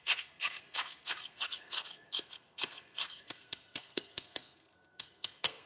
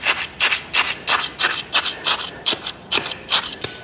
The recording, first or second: second